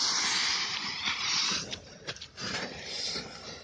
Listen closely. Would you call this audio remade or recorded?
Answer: recorded